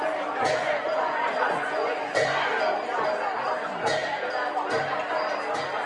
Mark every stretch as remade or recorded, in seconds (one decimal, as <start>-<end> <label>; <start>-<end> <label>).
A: 0.0-2.5 remade; 2.5-5.9 recorded

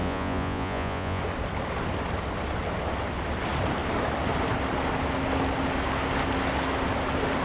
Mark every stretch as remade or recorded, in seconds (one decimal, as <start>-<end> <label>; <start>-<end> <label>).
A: 0.0-1.2 remade; 1.2-7.4 recorded